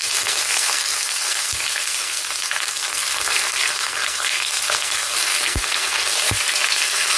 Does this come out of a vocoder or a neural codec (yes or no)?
yes